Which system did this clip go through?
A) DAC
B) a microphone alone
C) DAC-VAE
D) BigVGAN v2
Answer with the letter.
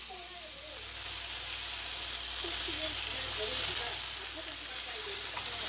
D